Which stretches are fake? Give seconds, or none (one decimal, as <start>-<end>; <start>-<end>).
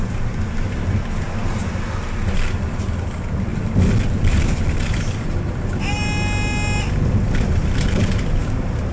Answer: none